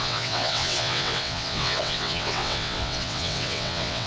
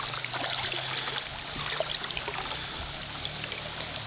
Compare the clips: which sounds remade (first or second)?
first